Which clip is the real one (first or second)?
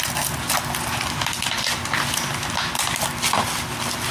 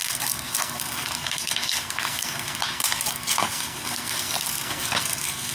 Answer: first